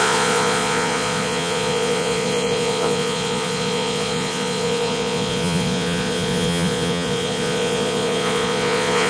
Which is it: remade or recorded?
remade